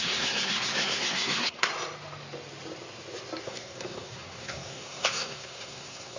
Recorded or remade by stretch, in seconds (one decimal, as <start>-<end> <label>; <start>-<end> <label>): 0.0-1.7 remade; 1.7-3.4 recorded; 3.4-6.2 remade